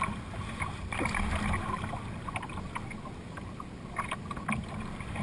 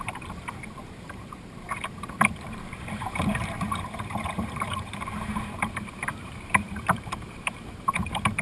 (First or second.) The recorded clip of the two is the first